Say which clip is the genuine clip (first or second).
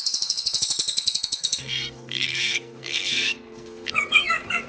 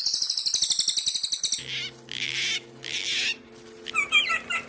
second